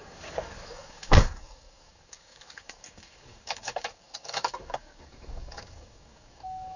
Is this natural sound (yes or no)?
no